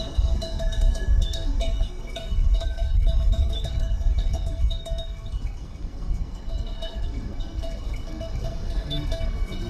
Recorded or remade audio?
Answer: remade